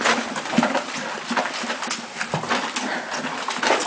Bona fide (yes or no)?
yes